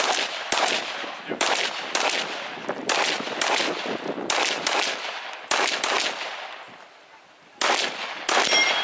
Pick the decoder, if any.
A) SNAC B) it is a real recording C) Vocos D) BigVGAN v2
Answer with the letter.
B